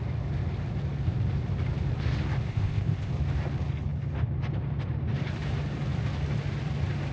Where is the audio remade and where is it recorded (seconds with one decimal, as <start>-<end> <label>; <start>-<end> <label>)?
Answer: 0.0-2.5 recorded; 2.5-3.1 remade; 3.1-7.1 recorded